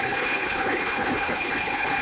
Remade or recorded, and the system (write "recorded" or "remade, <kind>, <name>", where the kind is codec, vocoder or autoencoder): remade, codec, HILCodec